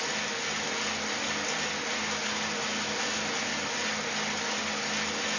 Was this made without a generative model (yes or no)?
yes